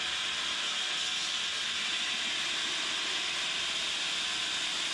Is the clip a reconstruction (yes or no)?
no